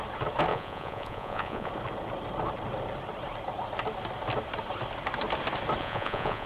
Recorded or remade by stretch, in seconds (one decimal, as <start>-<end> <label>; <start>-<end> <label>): 0.0-0.5 recorded; 0.5-1.7 remade; 1.7-5.8 recorded; 5.8-6.5 remade